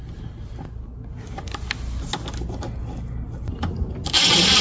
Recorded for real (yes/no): yes